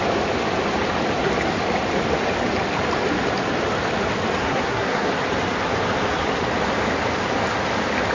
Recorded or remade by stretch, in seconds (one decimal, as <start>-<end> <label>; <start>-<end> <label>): 0.0-4.4 recorded; 4.4-5.1 remade; 5.1-8.1 recorded